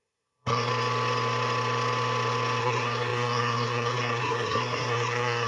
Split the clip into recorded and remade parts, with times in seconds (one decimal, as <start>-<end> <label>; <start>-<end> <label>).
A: 0.0-0.7 remade; 0.7-2.6 recorded; 2.6-5.5 remade